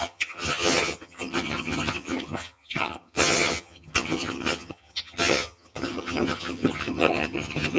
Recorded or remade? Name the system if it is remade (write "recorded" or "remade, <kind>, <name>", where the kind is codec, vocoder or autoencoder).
remade, vocoder, HiFi-GAN